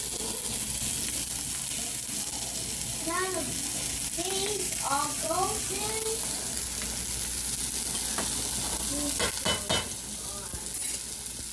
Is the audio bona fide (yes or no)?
yes